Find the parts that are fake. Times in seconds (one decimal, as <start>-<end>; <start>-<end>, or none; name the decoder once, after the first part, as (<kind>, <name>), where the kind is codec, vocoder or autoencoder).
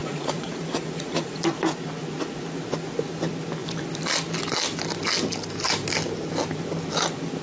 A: 0.0-1.5 (vocoder, Vocos)